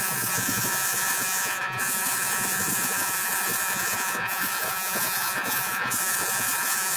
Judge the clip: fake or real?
fake